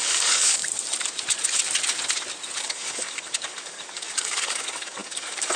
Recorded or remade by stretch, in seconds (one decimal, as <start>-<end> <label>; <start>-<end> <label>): 0.0-0.6 remade; 0.6-2.6 recorded; 2.6-5.6 remade